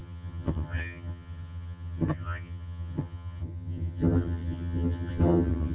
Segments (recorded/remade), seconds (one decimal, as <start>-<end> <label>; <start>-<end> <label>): 0.0-5.7 remade